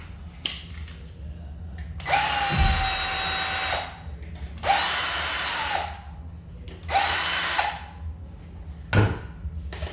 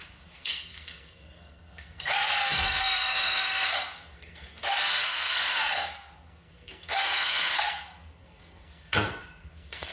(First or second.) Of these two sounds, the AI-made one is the second